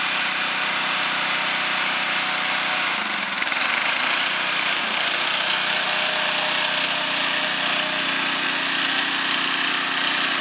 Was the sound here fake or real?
real